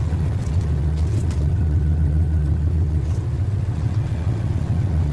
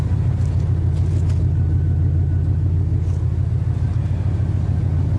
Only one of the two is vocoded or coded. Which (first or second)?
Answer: first